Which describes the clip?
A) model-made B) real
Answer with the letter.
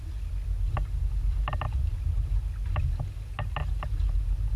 B